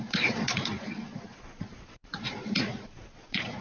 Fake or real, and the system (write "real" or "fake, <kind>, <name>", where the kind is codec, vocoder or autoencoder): fake, vocoder, Vocos